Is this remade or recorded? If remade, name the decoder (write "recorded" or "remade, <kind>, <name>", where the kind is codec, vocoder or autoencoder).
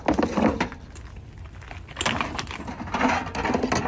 recorded